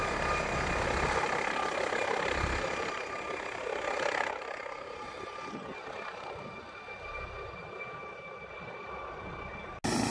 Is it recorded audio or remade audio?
recorded